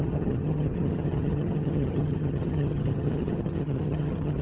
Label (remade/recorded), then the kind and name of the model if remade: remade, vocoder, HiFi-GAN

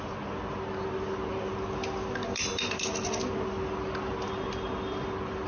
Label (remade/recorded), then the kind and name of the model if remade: recorded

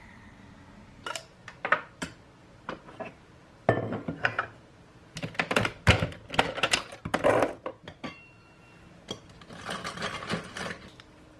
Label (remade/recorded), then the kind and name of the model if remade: recorded